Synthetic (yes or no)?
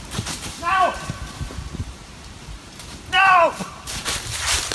yes